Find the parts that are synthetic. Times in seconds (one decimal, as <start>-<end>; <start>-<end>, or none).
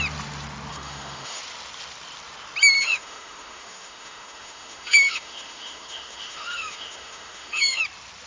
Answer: 0.7-1.4; 2.8-7.8